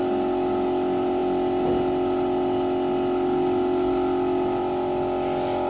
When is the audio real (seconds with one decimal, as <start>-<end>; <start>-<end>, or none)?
0.0-5.7

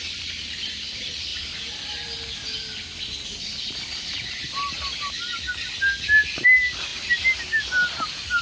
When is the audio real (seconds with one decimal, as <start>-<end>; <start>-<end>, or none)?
0.0-8.4

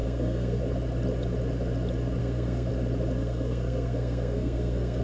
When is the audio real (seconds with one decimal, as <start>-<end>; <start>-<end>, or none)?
0.6-2.2; 2.7-3.2

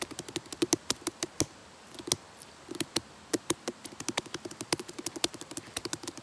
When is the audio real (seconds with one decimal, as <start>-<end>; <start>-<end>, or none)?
0.0-6.2